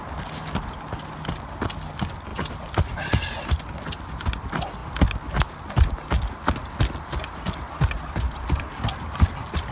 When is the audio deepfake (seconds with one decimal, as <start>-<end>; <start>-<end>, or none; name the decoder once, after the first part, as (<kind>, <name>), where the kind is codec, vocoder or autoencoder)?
none

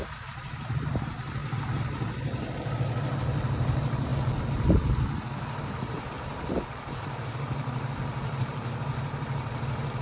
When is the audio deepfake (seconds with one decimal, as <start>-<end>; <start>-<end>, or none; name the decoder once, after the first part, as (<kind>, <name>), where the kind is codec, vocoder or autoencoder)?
0.0-10.0 (vocoder, BigVGAN v2)

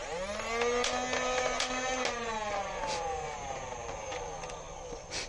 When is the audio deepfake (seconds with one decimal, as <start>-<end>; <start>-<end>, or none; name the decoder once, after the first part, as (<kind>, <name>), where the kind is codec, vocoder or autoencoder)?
none

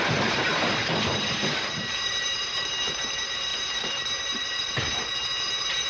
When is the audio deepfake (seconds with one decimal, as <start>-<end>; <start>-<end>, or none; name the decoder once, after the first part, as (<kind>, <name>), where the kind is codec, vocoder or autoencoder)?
0.0-5.9 (vocoder, BigVGAN v2)

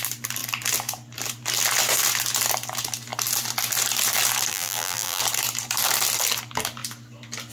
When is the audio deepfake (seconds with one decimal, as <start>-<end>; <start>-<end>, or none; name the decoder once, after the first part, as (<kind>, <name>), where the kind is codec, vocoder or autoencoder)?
4.5-5.2 (vocoder, BigVGAN v2)